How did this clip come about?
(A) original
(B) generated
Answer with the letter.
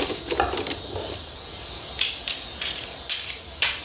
B